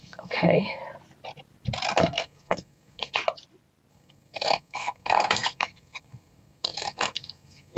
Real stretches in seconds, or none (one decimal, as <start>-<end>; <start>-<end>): 0.8-2.0; 3.2-3.9